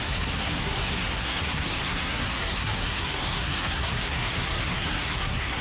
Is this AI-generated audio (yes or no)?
yes